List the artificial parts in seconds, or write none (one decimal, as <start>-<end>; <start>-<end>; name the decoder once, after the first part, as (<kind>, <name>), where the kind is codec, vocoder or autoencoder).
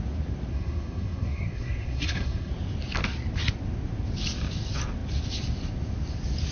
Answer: 0.5-2.5 (codec, SNAC)